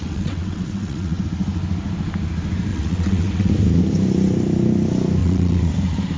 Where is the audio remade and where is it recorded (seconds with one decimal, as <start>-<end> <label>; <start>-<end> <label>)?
0.0-1.2 remade; 1.2-2.7 recorded; 2.7-3.5 remade; 3.5-5.2 recorded; 5.2-5.7 remade; 5.7-6.2 recorded